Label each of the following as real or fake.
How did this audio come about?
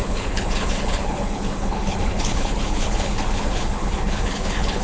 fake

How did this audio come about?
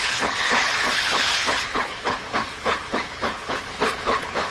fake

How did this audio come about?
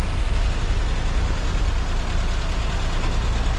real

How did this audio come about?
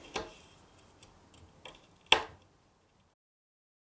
real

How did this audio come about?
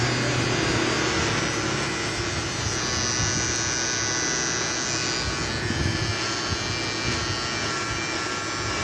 real